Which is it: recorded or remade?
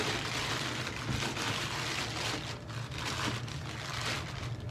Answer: recorded